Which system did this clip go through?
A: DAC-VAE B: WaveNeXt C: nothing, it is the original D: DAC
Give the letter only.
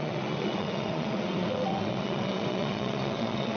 B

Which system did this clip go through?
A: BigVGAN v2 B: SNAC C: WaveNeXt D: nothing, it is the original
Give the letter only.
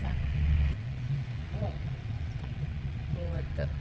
C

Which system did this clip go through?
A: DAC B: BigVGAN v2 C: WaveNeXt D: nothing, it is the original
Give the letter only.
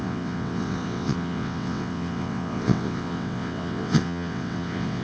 C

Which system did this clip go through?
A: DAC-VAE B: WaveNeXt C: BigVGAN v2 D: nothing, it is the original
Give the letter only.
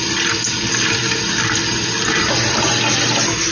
D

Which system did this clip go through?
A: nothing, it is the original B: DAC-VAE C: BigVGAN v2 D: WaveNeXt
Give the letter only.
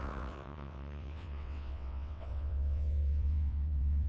D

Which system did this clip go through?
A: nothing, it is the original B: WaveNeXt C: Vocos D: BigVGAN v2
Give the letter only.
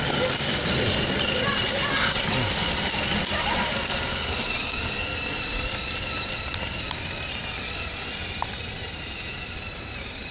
A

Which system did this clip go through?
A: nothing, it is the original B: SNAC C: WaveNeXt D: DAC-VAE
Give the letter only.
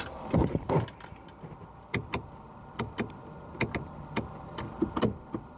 A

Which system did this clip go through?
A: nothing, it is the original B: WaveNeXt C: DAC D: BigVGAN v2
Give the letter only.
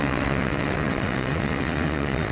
B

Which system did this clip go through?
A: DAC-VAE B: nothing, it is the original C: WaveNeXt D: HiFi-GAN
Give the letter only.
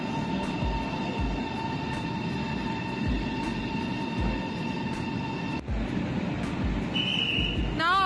B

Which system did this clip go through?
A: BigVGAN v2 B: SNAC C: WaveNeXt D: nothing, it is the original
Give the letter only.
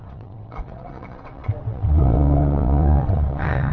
C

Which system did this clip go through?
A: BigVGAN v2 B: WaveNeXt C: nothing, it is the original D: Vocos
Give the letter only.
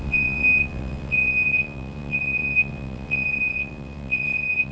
B